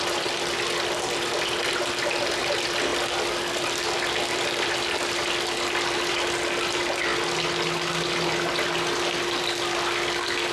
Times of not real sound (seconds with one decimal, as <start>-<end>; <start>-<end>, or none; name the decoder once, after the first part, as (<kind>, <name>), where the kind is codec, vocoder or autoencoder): 2.9-6.1 (vocoder, BigVGAN v2)